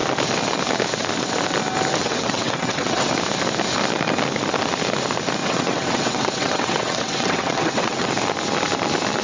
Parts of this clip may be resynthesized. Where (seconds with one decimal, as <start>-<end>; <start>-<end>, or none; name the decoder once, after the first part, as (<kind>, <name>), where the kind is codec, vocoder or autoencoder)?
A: 2.0-3.1 (vocoder, WaveNeXt); 5.4-8.1